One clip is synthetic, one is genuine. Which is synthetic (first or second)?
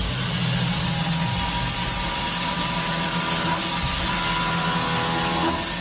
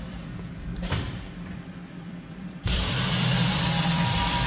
second